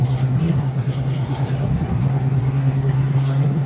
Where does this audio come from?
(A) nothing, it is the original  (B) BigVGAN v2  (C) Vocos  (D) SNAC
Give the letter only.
D